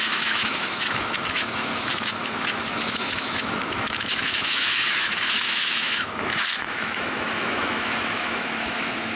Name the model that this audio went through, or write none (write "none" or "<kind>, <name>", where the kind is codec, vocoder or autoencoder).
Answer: autoencoder, DAC-VAE